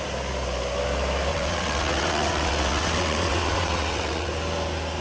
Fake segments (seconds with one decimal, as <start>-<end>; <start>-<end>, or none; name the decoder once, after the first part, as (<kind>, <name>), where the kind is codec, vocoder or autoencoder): 1.3-4.3 (vocoder, WaveNeXt)